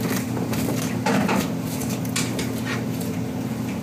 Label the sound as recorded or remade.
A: recorded